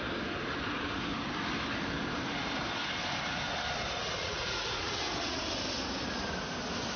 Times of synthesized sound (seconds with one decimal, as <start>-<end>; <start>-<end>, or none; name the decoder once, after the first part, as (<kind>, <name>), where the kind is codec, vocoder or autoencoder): 4.2-5.4 (vocoder, Vocos)